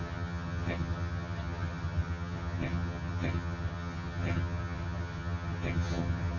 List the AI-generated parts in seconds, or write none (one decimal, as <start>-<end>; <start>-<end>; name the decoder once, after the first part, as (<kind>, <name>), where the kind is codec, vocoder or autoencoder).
0.0-6.4 (vocoder, HiFi-GAN)